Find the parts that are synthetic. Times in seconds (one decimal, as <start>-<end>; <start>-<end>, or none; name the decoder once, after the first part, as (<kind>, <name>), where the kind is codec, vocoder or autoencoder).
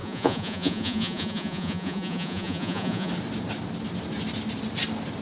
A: 0.0-3.1 (vocoder, Vocos)